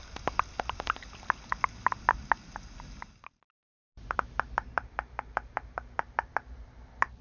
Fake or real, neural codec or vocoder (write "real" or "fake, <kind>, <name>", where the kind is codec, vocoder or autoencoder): real